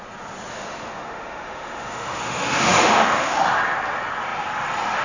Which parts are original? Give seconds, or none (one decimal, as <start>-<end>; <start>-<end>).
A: 0.0-0.5; 3.5-5.0